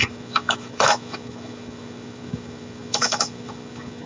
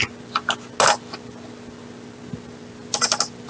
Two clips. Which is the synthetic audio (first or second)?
first